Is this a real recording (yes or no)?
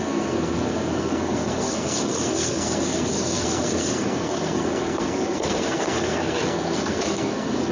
no